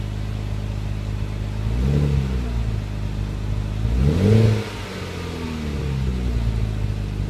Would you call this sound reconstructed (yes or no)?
no